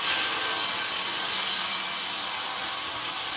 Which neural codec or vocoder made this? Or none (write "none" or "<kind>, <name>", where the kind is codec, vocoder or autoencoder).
none